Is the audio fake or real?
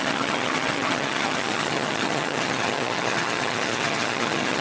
fake